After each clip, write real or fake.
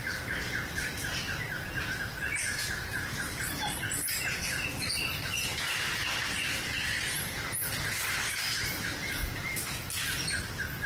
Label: real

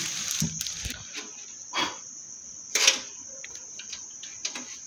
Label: real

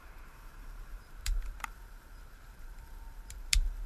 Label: fake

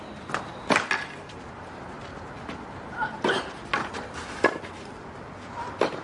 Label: real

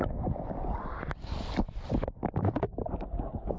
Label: real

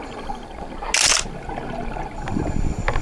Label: real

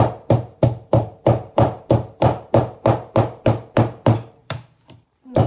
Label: fake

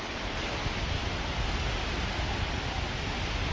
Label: real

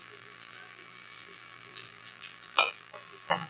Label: fake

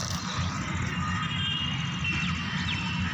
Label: real